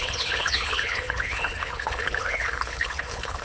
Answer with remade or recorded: remade